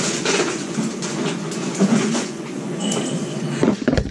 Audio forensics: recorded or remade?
remade